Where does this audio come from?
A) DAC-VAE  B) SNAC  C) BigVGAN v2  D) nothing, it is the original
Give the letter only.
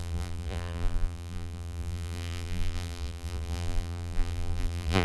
C